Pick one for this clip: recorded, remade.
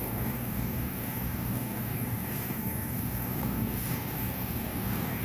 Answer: remade